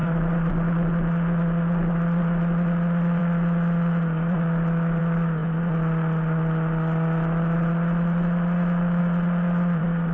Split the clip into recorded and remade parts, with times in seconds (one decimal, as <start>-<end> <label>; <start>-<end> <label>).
0.0-0.5 remade; 0.5-10.1 recorded